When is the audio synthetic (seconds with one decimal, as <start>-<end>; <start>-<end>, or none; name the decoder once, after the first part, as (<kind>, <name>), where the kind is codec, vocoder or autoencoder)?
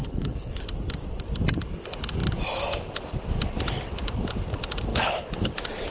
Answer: 0.0-0.6 (codec, HILCodec); 4.9-5.5